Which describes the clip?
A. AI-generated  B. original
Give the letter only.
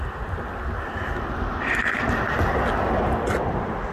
B